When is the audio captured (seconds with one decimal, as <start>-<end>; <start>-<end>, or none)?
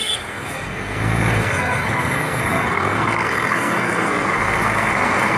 none